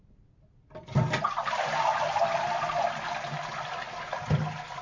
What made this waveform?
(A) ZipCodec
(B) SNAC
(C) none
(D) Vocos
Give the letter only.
C